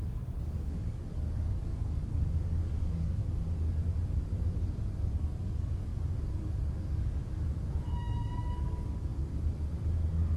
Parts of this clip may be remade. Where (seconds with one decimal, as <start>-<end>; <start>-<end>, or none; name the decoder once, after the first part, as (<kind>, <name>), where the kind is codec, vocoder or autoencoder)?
0.0-3.2 (codec, DAC); 4.5-7.2; 7.9-9.1